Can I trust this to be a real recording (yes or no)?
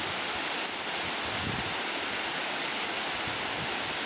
yes